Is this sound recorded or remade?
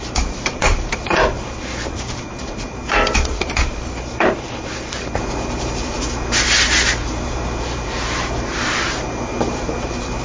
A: remade